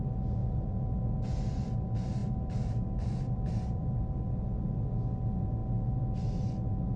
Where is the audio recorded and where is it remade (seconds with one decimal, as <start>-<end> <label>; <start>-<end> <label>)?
0.0-0.4 recorded; 0.4-1.0 remade; 1.0-2.2 recorded; 2.2-4.0 remade; 4.0-7.0 recorded